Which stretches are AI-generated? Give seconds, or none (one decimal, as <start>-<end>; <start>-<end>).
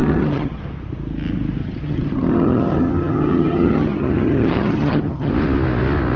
0.0-0.6; 1.6-5.3